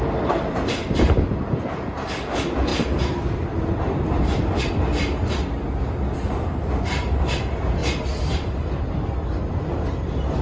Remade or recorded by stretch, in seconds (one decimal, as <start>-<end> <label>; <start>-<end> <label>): 0.0-10.4 recorded